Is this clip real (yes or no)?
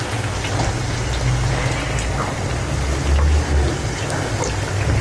yes